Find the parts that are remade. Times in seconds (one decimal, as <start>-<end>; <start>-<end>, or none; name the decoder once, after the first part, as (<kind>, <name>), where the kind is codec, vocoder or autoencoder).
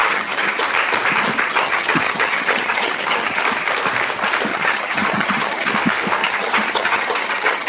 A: 0.0-0.6 (vocoder, HiFi-GAN); 1.5-3.4; 4.5-5.7; 6.2-7.7